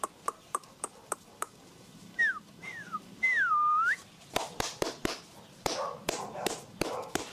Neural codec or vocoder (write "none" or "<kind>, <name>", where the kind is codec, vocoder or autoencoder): vocoder, BigVGAN v2